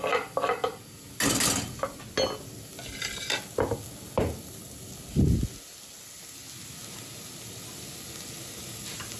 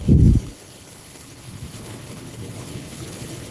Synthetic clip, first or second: second